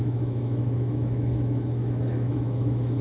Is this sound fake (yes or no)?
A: yes